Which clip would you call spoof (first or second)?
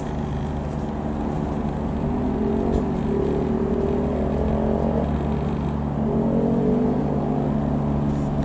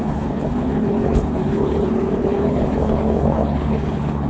second